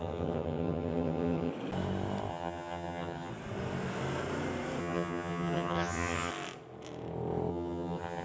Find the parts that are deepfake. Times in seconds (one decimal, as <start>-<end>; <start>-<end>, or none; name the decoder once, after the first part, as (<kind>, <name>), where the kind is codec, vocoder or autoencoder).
0.0-1.5 (vocoder, HiFi-GAN); 2.3-3.3; 4.8-6.3; 7.5-8.2